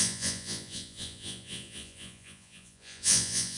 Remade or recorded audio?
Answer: remade